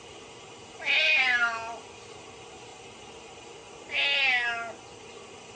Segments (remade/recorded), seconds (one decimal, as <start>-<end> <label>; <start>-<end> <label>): 0.0-3.6 remade; 3.6-5.0 recorded; 5.0-5.6 remade